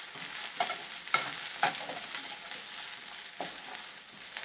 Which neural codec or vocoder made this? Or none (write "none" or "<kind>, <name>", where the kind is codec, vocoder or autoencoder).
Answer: none